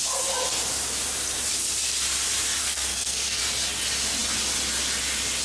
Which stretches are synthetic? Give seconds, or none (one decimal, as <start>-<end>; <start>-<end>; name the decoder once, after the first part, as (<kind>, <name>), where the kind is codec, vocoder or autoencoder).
2.6-3.4 (codec, SNAC)